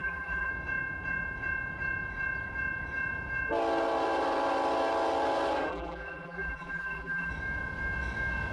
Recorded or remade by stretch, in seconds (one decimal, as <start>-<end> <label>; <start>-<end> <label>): 0.0-0.5 remade; 0.5-5.7 recorded; 5.7-7.3 remade; 7.3-8.5 recorded